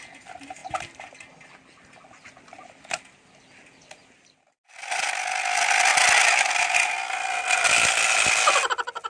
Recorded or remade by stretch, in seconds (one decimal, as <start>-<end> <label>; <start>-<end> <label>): 0.0-9.1 recorded